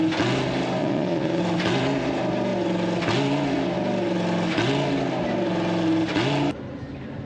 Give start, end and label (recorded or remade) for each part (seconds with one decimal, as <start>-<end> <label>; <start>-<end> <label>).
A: 0.0-0.8 recorded; 0.8-1.4 remade; 1.4-7.3 recorded